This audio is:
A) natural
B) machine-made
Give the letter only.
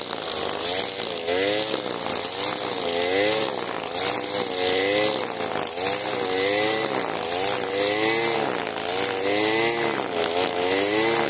A